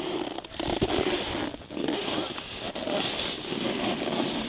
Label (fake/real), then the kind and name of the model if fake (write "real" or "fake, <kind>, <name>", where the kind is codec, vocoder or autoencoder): real